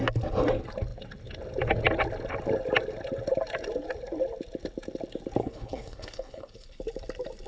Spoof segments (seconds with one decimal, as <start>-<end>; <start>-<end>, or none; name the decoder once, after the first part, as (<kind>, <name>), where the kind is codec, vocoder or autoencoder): 5.4-6.8 (codec, HILCodec)